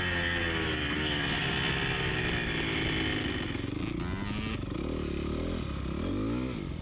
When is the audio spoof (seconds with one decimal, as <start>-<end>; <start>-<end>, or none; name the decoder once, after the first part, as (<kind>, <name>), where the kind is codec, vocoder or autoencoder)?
none